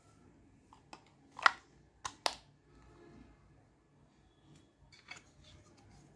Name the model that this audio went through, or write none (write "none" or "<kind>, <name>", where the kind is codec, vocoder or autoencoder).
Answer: none